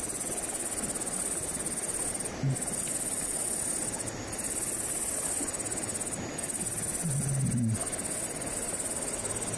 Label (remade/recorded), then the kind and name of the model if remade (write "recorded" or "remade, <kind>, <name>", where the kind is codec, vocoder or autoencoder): recorded